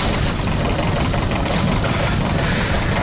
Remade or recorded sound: recorded